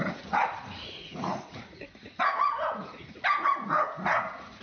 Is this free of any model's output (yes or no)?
no